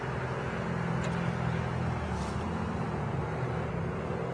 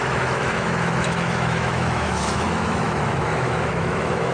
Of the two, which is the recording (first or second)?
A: first